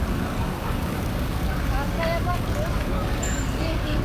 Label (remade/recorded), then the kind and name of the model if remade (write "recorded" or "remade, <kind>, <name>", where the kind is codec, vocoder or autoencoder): remade, codec, DAC